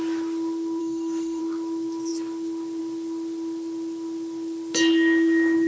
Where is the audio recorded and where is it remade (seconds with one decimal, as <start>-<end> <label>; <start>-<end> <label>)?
0.0-0.8 recorded; 0.8-1.4 remade; 1.4-5.7 recorded